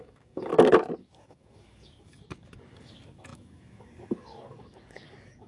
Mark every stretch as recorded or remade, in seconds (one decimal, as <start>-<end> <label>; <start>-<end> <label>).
0.0-0.5 remade; 0.5-1.0 recorded; 1.0-5.5 remade